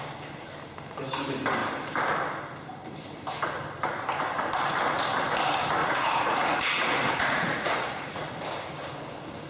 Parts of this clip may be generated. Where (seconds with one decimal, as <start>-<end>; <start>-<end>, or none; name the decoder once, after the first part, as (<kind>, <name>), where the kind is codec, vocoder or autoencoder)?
5.8-8.3 (vocoder, Vocos)